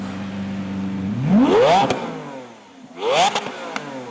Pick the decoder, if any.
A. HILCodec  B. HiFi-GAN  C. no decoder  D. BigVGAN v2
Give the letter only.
C